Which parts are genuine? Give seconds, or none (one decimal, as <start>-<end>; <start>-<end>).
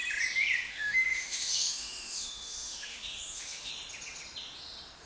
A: 0.0-0.7; 3.7-5.1